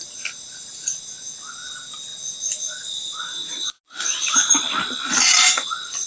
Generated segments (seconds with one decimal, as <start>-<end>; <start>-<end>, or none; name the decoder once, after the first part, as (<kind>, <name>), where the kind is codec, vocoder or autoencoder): none